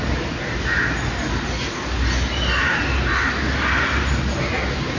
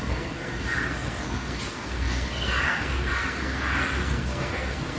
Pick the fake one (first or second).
second